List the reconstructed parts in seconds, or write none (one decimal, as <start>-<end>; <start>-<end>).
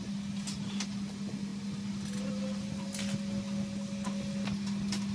none